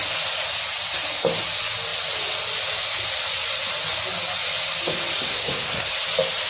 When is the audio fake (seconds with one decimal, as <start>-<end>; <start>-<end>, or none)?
5.3-5.9